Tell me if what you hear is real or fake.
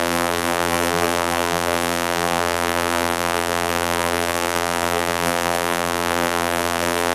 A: fake